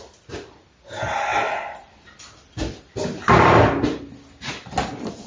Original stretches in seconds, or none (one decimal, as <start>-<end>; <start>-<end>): 0.0-5.3